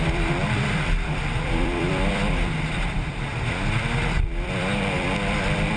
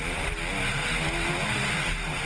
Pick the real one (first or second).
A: second